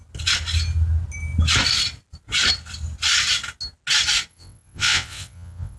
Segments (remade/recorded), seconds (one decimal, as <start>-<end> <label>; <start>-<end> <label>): 0.0-4.3 recorded; 4.3-5.8 remade